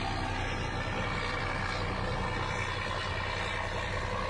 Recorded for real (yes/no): yes